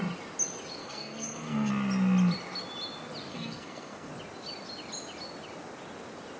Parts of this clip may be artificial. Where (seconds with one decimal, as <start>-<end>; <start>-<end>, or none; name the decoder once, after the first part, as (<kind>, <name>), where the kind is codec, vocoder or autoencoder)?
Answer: 0.8-1.7 (codec, SNAC); 3.3-4.1